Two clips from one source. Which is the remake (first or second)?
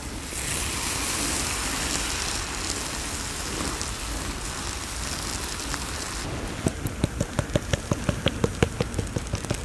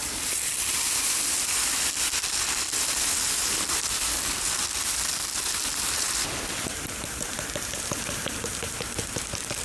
second